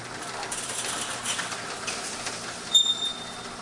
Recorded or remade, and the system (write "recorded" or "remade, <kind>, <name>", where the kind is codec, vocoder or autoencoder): recorded